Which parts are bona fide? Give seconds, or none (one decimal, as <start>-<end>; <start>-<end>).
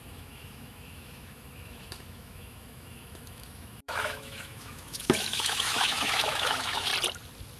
6.9-7.6